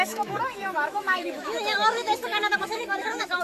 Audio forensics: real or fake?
fake